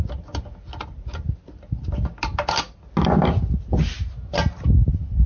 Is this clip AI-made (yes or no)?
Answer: no